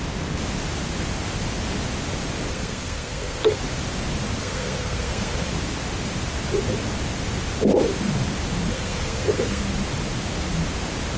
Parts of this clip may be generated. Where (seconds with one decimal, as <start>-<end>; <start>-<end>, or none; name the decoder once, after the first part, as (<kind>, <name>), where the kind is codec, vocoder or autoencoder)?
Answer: 2.5-3.6 (codec, SNAC); 4.4-5.5; 8.7-9.6